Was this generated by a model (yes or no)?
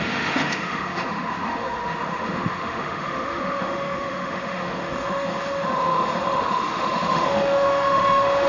yes